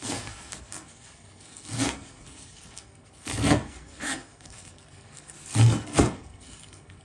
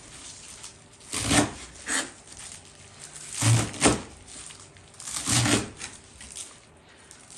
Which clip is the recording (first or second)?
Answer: second